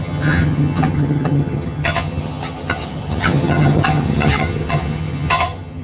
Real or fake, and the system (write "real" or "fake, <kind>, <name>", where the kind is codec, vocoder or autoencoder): fake, vocoder, HiFi-GAN